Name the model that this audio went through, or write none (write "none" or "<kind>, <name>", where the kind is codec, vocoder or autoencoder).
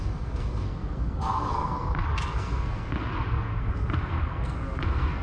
codec, SNAC